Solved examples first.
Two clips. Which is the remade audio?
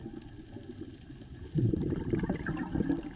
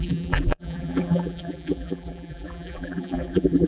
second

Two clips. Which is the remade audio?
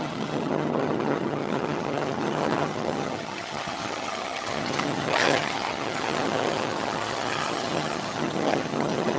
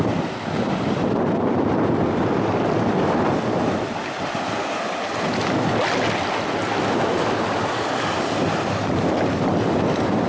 first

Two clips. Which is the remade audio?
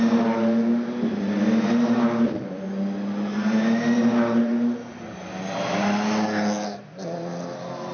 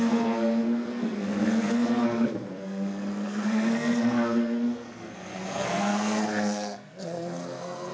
second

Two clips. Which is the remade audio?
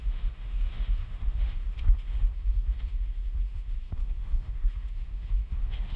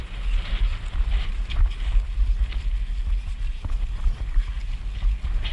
first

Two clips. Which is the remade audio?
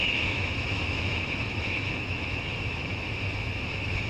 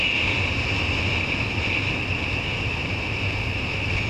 first